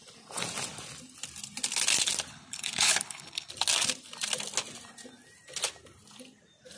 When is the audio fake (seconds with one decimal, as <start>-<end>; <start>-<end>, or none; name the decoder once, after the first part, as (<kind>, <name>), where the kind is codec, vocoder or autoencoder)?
2.3-3.5 (codec, HILCodec)

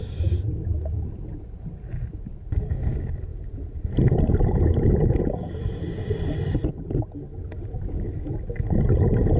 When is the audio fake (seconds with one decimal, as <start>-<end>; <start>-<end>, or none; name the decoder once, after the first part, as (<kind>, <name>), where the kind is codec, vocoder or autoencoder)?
none

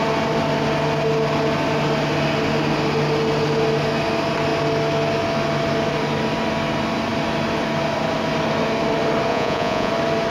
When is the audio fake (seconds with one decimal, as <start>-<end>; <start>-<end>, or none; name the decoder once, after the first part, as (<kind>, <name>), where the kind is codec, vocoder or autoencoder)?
9.3-9.9 (vocoder, Vocos)

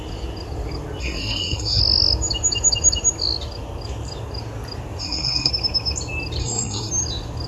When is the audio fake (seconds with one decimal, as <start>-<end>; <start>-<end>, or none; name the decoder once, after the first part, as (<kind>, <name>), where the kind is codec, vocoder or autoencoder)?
1.0-1.8 (codec, SNAC); 5.0-5.5; 6.4-6.9

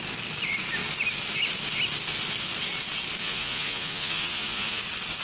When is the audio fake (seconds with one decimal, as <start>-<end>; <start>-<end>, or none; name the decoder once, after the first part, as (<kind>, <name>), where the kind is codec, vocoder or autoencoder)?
3.2-4.8 (vocoder, Vocos)

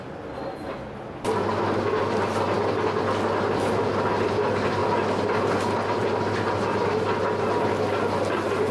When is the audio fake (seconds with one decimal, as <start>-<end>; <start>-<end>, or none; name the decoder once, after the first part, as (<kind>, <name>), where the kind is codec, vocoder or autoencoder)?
none

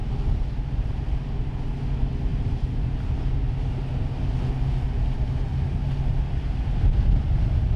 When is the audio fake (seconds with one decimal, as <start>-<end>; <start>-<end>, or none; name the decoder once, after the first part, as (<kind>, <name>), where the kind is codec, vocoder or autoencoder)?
0.0-1.0 (vocoder, BigVGAN v2); 2.3-2.9